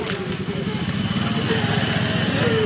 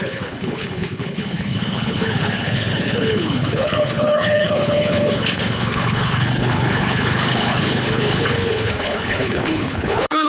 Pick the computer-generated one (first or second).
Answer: second